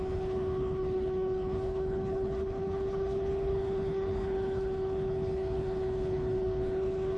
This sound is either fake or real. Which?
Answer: fake